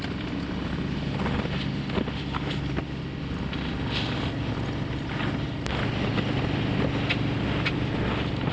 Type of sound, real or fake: real